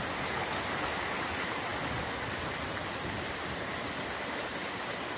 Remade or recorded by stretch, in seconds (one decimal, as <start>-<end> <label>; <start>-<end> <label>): 0.0-5.2 recorded